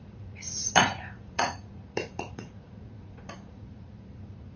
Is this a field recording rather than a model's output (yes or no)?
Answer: no